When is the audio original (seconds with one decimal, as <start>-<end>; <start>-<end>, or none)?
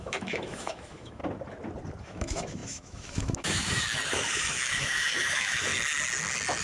1.2-2.0; 5.7-6.6